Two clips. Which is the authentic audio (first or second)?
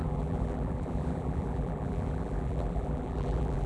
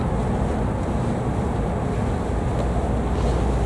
second